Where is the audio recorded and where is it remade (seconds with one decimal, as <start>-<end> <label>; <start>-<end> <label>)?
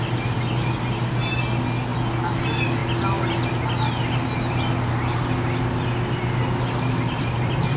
0.0-7.8 recorded